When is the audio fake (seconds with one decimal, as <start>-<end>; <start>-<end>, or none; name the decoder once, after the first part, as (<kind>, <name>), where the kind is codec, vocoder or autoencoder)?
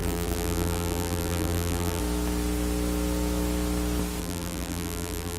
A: 0.0-2.0 (vocoder, BigVGAN v2); 4.2-5.4